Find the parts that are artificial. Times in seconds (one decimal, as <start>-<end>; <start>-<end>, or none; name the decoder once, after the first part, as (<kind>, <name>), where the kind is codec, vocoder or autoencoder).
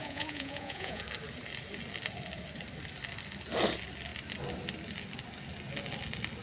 0.0-1.0 (vocoder, Vocos)